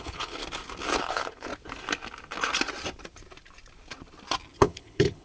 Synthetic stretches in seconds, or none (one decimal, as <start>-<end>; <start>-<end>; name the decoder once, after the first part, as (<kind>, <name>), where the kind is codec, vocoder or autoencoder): 0.0-0.4 (codec, HILCodec); 1.0-1.5; 4.6-5.2